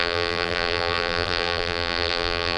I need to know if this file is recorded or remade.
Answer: remade